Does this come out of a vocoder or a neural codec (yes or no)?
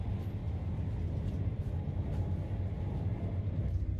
no